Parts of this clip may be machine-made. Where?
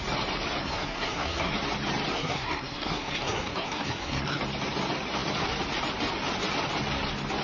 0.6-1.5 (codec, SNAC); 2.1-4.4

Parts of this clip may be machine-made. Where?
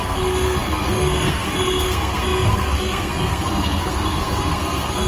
0.0-5.1 (codec, SNAC)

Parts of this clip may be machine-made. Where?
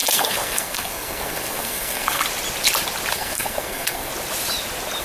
0.0-2.2 (codec, SNAC); 3.1-4.1